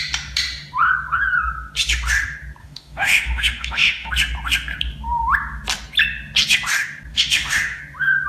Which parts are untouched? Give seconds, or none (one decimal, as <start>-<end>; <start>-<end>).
0.0-2.6; 4.1-7.1; 7.8-8.3